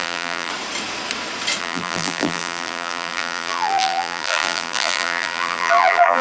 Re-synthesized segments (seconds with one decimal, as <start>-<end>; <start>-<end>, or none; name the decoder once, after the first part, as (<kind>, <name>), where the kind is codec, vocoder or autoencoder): 0.0-0.5 (vocoder, BigVGAN v2); 1.6-6.2